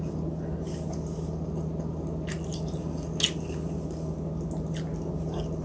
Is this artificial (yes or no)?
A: no